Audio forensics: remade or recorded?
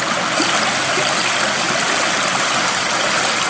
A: recorded